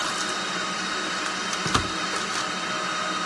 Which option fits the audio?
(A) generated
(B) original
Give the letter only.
B